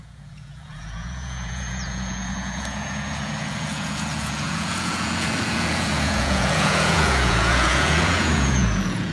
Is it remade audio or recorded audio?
remade